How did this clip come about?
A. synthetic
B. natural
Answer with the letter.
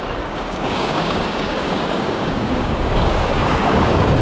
A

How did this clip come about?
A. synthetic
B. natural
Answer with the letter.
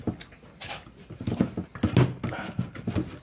B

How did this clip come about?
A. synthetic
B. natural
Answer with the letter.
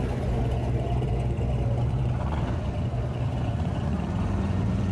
A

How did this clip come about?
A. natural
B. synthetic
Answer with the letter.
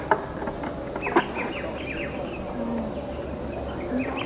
A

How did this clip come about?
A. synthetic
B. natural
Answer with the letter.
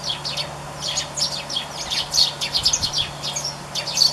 B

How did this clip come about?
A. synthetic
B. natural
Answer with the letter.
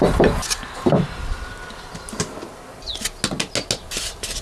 B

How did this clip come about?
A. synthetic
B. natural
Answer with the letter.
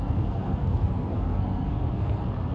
A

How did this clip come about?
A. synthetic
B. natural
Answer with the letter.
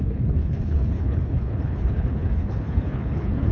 A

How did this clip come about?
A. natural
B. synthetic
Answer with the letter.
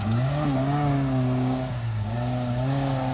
B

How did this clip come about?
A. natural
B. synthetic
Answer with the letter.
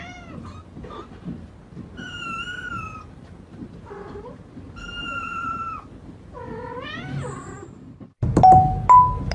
A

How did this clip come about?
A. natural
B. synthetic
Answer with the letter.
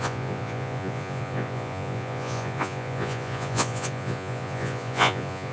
B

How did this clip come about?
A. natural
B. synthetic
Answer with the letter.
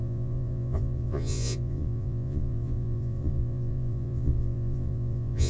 B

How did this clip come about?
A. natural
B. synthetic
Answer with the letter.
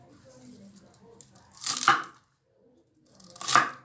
A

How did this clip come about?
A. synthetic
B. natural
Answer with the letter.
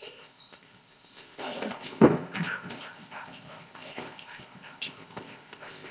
A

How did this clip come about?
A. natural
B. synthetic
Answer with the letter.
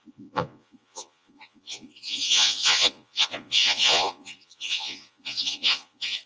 B